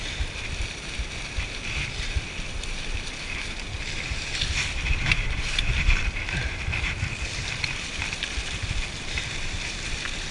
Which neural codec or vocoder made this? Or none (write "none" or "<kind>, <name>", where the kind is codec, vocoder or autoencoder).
none